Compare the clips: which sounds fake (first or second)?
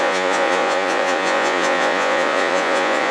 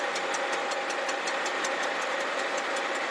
first